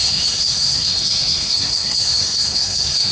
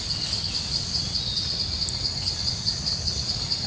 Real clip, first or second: second